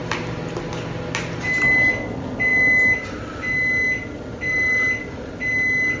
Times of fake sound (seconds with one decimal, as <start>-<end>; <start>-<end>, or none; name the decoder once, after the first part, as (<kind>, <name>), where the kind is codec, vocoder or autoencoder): none